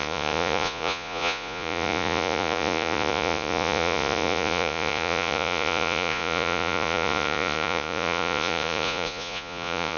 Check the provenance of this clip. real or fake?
fake